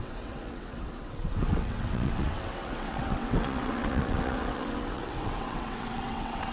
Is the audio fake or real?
fake